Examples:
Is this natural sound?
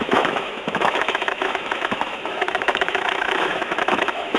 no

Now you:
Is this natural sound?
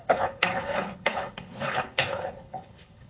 no